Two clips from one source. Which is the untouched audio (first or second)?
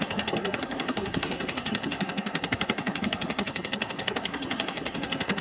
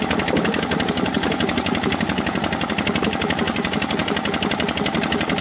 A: second